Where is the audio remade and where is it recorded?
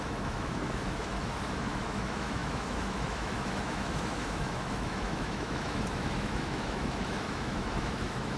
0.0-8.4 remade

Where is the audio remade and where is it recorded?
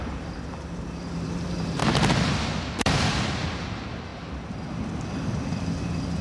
0.0-1.8 remade; 1.8-2.8 recorded; 2.8-4.1 remade; 4.1-6.2 recorded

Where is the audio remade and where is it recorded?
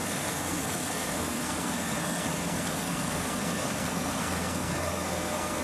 0.0-5.6 remade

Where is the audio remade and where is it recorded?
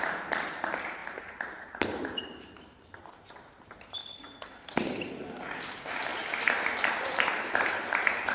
0.0-4.0 remade; 4.0-5.0 recorded; 5.0-6.1 remade; 6.1-6.9 recorded; 6.9-8.3 remade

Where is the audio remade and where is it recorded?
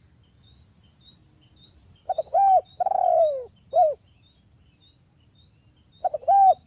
0.0-2.7 recorded; 2.7-5.5 remade; 5.5-6.7 recorded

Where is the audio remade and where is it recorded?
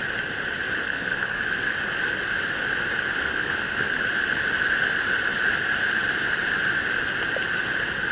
0.0-0.8 recorded; 0.8-1.4 remade; 1.4-3.2 recorded; 3.2-3.9 remade; 3.9-8.1 recorded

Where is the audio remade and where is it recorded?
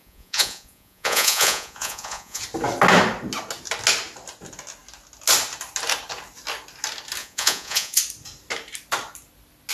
0.0-2.4 remade; 2.4-7.2 recorded; 7.2-8.0 remade; 8.0-9.7 recorded